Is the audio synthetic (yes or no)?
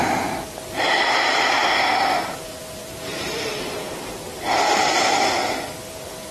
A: yes